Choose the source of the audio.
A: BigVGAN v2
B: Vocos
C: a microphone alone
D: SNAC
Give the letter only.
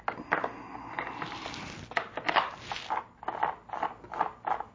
C